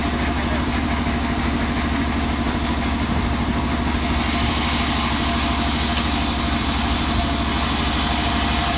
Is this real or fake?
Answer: real